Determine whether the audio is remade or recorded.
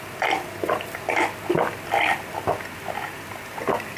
recorded